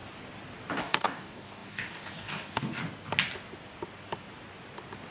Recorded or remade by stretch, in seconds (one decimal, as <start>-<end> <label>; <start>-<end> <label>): 0.0-0.8 recorded; 0.8-2.8 remade; 2.8-5.1 recorded